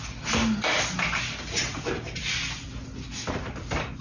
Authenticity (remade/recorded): recorded